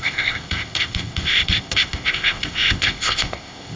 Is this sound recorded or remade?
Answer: remade